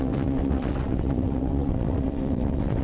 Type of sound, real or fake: fake